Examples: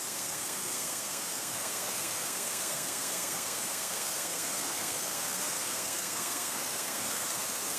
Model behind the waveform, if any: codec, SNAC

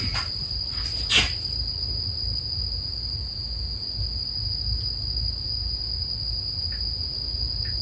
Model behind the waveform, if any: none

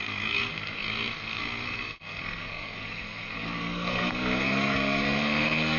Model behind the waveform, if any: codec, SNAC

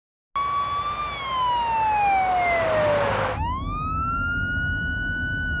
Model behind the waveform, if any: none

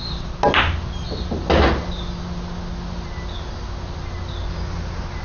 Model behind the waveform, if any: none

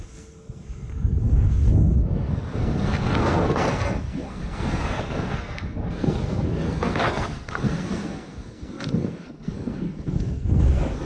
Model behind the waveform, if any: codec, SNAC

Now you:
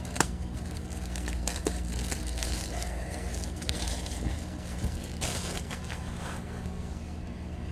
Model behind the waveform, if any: codec, SNAC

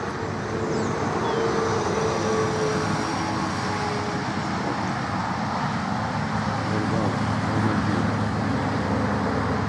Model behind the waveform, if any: none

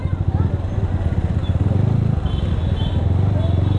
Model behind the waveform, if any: none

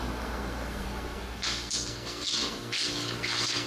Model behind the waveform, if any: codec, SNAC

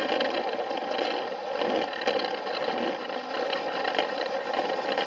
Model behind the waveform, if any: none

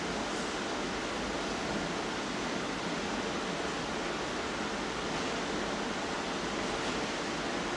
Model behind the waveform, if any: none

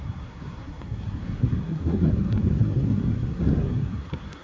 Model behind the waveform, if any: codec, SNAC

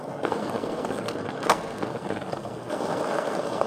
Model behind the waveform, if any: codec, SNAC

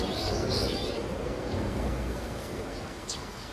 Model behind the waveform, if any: codec, SNAC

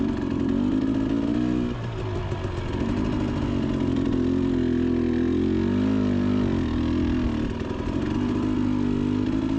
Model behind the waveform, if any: none